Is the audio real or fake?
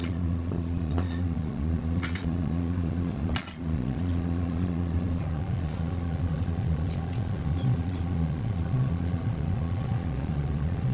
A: fake